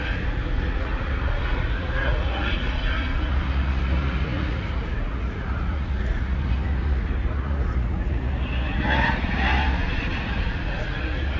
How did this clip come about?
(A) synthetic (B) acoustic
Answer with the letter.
A